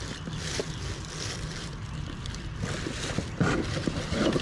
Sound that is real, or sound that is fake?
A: real